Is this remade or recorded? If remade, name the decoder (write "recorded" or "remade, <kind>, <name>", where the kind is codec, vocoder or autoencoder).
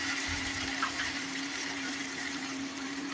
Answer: remade, vocoder, BigVGAN v2